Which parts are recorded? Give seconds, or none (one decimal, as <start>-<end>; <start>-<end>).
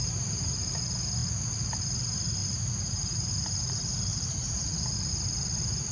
0.7-2.4; 3.3-4.1; 5.1-5.9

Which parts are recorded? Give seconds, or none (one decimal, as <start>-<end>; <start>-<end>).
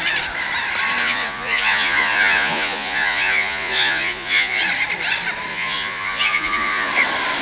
0.0-1.0; 4.6-5.5; 6.9-7.4